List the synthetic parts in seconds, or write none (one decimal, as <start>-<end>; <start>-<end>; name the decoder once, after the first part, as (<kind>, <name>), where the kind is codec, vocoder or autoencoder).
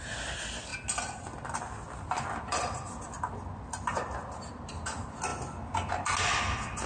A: none